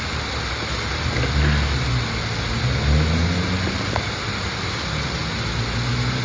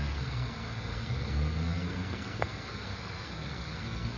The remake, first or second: second